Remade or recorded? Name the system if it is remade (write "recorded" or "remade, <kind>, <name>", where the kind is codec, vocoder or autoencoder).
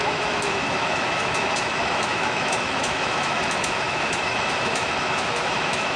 remade, autoencoder, DAC-VAE